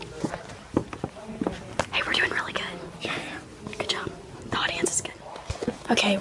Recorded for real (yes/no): yes